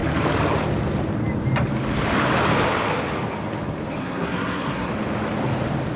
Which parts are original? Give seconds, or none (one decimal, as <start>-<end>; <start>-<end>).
0.0-4.0; 4.9-6.0